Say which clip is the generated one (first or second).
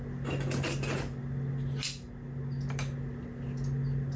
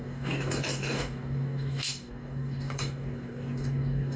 second